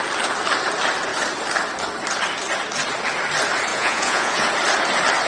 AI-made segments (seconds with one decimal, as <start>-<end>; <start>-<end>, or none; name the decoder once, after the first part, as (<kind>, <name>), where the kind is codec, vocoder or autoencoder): 3.7-4.5 (vocoder, Vocos)